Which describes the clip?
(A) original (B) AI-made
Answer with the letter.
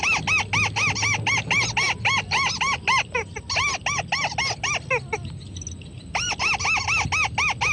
A